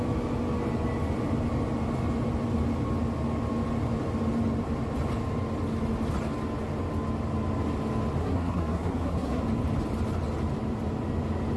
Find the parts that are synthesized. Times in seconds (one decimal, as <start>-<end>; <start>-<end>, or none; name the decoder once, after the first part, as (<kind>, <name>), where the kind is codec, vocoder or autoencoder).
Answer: 8.2-9.4 (codec, SNAC)